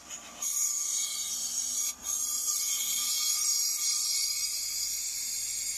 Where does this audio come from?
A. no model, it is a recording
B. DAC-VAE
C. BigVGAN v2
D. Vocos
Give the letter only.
A